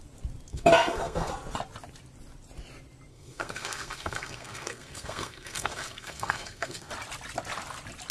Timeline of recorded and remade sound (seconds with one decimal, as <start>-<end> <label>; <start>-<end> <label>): 0.0-0.5 recorded; 0.5-1.3 remade; 1.3-3.1 recorded; 3.1-6.9 remade; 6.9-8.1 recorded